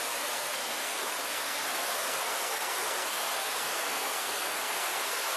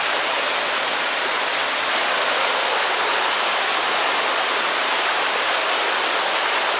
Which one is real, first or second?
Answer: second